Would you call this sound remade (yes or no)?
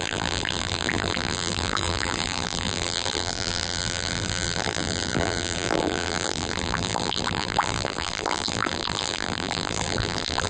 yes